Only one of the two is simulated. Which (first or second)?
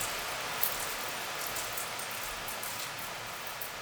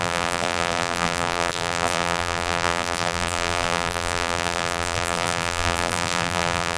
second